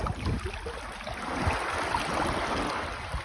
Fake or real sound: real